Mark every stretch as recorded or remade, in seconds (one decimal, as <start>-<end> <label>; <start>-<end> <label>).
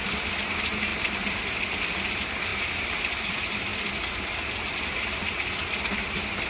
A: 0.0-0.9 remade; 0.9-2.1 recorded; 2.1-3.7 remade; 3.7-4.9 recorded; 4.9-6.5 remade